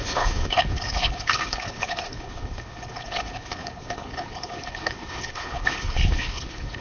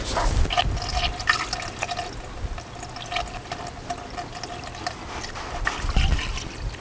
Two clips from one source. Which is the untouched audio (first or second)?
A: second